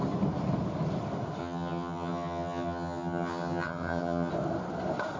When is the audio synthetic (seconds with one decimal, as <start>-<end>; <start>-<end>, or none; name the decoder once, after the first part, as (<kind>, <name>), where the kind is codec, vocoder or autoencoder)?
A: 1.4-4.3 (vocoder, HiFi-GAN)